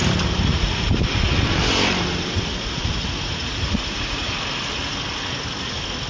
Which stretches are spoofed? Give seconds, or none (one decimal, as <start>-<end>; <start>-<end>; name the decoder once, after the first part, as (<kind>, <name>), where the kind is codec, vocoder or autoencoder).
0.5-1.4 (vocoder, Vocos); 2.5-4.3